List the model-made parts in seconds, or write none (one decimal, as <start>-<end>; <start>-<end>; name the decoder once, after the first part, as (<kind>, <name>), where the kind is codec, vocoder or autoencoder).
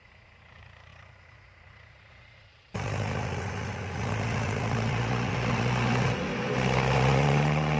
0.0-6.3 (vocoder, Vocos); 6.9-7.8